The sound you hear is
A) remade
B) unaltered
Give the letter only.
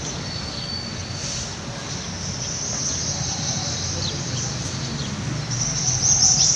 B